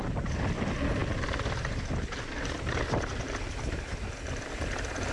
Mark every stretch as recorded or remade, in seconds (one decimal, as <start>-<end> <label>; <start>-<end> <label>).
0.0-5.1 recorded